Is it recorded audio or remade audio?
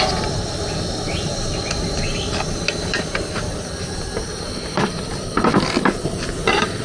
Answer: recorded